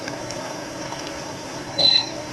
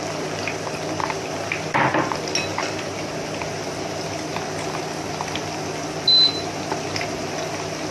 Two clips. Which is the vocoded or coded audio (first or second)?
first